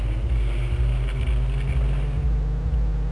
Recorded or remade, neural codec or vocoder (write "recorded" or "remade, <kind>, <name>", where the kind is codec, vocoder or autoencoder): recorded